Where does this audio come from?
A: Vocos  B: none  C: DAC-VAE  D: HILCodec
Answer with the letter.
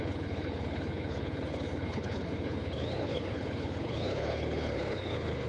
D